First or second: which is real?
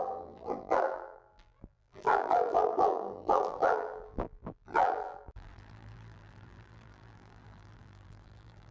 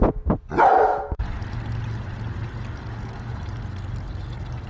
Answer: second